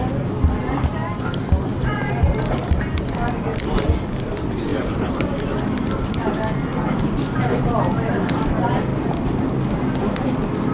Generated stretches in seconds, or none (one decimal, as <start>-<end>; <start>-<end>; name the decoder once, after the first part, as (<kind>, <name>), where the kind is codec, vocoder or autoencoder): 1.7-2.8 (vocoder, BigVGAN v2); 4.7-6.2; 8.9-9.5